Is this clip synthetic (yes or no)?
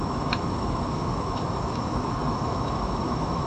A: yes